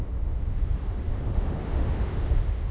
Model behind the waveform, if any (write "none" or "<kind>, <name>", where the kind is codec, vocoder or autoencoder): autoencoder, DAC-VAE